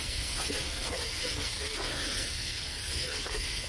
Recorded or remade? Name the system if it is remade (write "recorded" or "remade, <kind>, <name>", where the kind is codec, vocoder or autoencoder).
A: remade, codec, SNAC